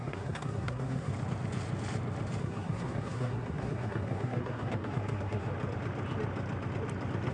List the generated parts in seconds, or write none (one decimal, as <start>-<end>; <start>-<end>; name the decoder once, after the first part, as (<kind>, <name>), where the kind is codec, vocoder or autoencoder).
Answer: 0.0-1.1 (codec, SNAC); 2.4-5.5